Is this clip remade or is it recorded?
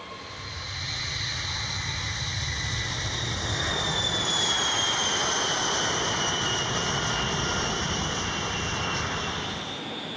recorded